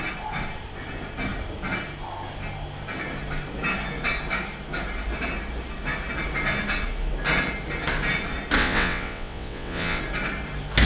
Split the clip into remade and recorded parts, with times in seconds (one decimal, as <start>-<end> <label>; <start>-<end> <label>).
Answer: 0.0-8.6 recorded; 8.6-10.0 remade; 10.0-10.8 recorded